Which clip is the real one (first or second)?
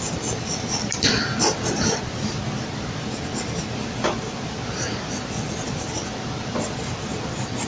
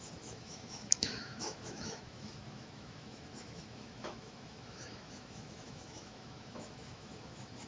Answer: first